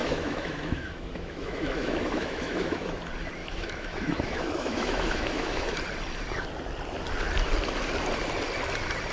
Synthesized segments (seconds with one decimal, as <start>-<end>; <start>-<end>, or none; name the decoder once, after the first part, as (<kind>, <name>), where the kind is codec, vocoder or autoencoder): 0.0-3.0 (autoencoder, DAC-VAE); 3.4-5.7